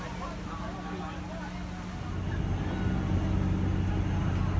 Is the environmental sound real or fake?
real